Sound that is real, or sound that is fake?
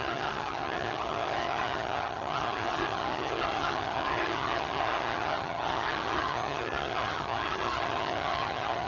fake